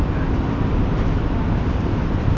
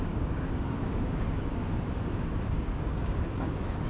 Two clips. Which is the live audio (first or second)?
first